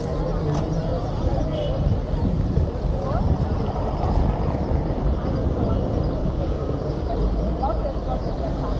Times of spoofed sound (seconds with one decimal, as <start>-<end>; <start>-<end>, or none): 6.2-7.1

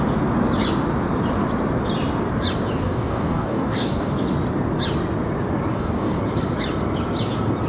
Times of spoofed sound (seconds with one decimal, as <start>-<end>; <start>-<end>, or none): 2.8-4.1; 5.7-6.2